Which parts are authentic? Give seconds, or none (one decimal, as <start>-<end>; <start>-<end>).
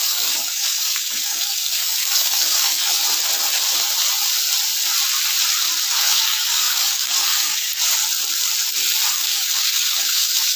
3.0-5.9; 7.7-9.1